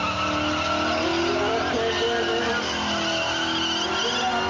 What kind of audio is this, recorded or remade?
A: recorded